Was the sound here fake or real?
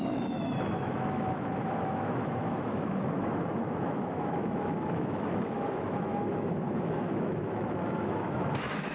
fake